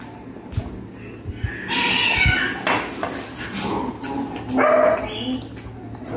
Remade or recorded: recorded